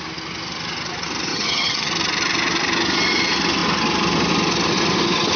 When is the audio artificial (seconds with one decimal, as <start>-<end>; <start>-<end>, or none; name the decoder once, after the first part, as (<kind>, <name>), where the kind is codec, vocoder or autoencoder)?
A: 1.3-1.9 (vocoder, HiFi-GAN)